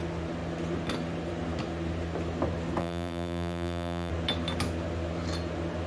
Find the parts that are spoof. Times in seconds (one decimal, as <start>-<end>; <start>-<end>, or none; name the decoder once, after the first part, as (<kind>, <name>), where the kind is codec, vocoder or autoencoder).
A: 2.8-4.1 (vocoder, BigVGAN v2)